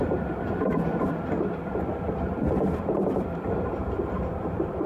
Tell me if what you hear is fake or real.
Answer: fake